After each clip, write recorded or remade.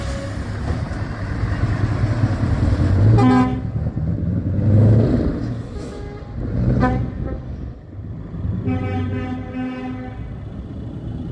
recorded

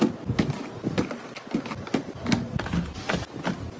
recorded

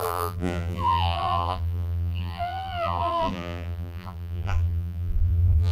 remade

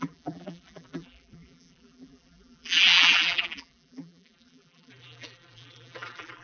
remade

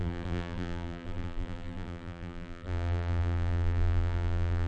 remade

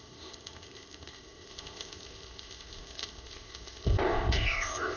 remade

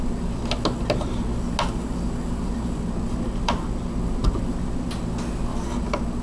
recorded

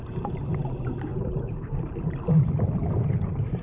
recorded